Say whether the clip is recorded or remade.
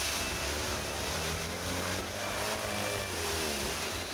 recorded